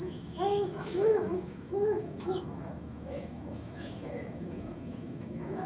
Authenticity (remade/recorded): remade